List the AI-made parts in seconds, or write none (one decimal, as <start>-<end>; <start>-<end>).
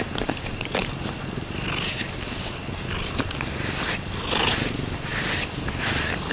none